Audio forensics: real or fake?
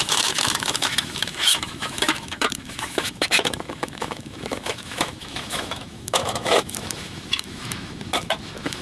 fake